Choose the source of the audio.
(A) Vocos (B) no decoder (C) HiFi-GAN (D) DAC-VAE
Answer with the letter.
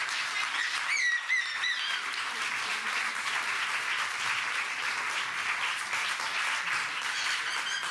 B